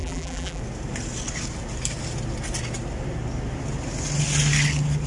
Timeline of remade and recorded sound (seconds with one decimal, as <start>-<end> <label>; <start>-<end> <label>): 0.0-0.6 remade; 0.6-5.1 recorded